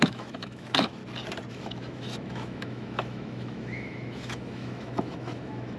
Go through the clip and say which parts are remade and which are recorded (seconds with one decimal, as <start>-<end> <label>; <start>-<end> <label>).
0.0-1.0 remade; 1.0-1.5 recorded; 1.5-5.8 remade